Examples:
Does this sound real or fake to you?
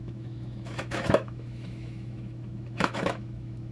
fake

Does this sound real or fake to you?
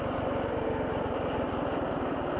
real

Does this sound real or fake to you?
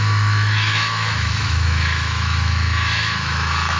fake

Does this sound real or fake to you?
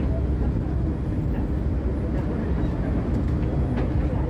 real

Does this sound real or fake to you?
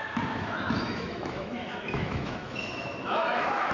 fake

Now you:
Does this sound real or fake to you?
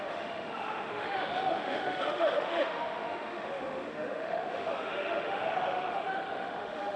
fake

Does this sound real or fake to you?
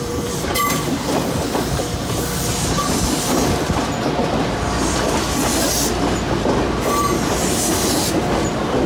real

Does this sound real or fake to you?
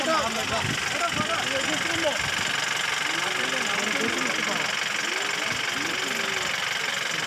real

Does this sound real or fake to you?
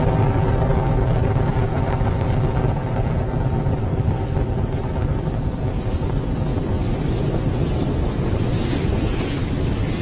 real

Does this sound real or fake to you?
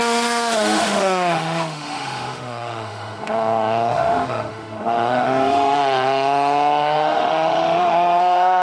fake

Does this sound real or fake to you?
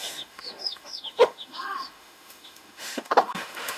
fake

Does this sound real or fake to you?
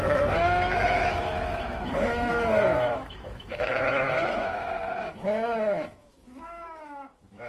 fake